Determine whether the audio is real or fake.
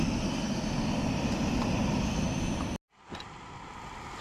real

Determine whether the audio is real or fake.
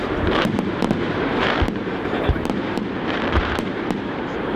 fake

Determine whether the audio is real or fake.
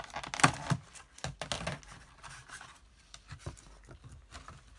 real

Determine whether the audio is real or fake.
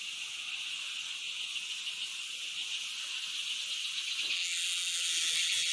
real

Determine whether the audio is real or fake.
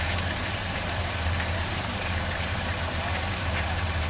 fake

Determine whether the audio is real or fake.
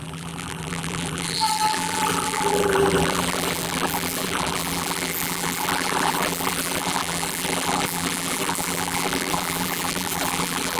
fake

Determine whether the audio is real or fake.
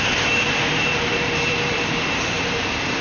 fake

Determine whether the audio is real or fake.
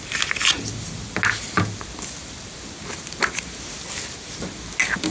real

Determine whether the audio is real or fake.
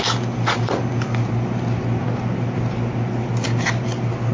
real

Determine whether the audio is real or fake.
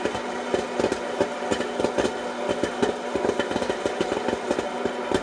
real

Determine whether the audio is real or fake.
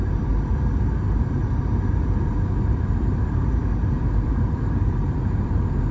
fake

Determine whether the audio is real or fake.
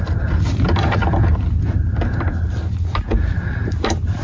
fake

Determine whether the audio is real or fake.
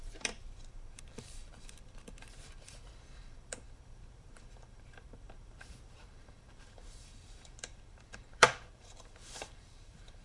fake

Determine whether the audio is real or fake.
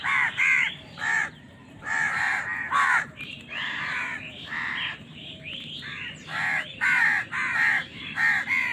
fake